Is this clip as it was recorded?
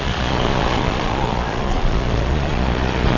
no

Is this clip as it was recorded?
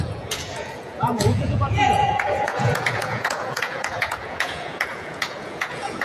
no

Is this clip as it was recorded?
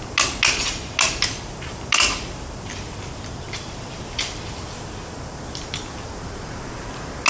yes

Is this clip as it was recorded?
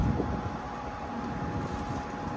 yes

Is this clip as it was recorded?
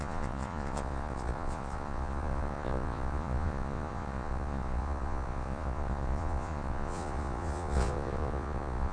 no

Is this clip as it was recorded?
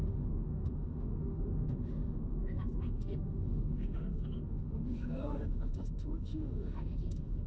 no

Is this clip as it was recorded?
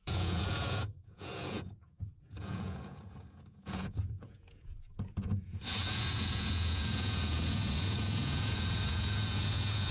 no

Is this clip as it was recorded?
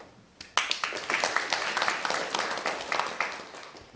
yes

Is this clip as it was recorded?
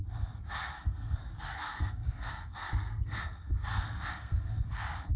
no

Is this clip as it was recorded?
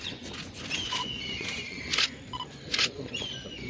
no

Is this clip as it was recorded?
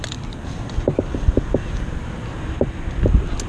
yes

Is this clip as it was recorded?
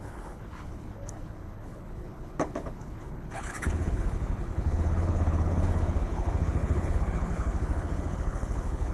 no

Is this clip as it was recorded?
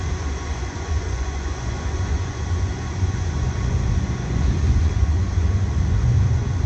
no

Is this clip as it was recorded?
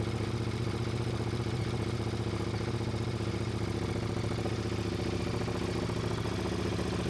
yes